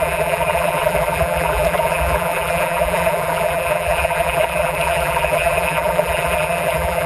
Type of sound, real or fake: fake